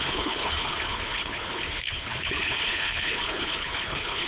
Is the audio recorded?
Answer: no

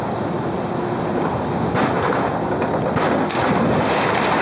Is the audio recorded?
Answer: yes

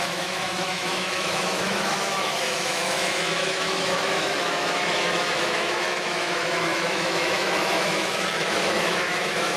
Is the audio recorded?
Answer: no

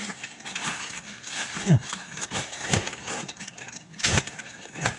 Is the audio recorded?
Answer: no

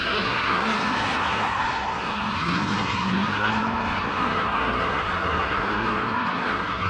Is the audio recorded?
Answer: no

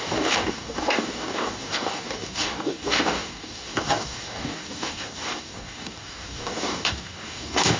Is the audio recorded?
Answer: no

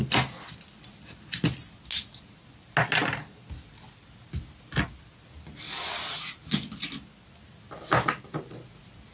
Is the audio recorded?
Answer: yes